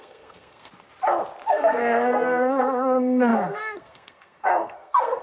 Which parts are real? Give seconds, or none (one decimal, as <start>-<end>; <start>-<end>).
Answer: 0.7-1.5